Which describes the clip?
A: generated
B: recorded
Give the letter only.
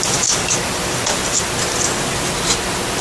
B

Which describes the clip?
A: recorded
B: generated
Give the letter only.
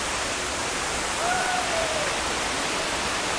A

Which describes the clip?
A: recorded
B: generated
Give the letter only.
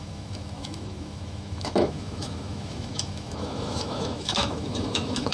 B